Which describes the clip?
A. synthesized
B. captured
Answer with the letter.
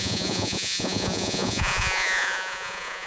A